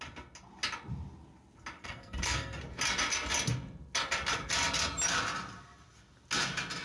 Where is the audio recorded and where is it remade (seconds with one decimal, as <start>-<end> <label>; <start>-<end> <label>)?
0.0-1.8 recorded; 1.8-2.6 remade; 2.6-6.8 recorded